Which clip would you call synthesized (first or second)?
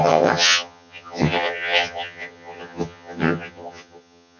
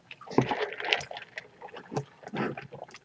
first